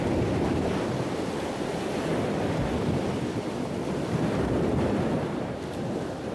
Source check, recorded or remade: recorded